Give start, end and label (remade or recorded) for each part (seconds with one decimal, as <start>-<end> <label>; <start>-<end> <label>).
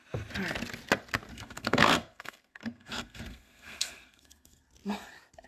0.0-1.3 recorded; 1.3-4.6 remade; 4.6-5.5 recorded